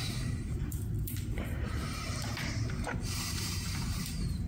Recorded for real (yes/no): no